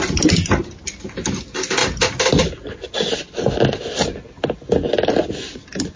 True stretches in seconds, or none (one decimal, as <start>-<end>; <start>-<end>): 0.0-6.0